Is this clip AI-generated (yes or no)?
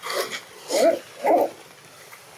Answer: no